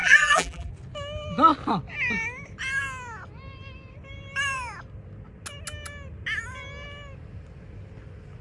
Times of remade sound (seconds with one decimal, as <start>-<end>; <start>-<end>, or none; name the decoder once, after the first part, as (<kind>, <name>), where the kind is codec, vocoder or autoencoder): 0.0-0.7 (vocoder, BigVGAN v2)